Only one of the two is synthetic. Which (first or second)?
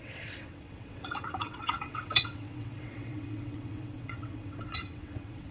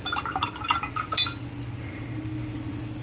first